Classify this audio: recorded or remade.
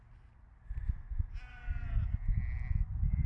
recorded